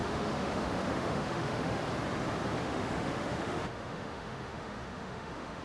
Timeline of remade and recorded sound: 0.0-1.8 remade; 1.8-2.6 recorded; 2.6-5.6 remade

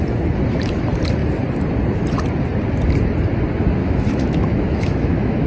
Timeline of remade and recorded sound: 0.0-3.8 recorded; 3.8-5.5 remade

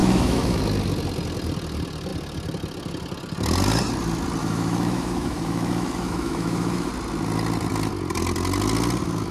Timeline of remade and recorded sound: 0.0-0.6 remade; 0.6-4.4 recorded; 4.4-6.9 remade; 6.9-9.3 recorded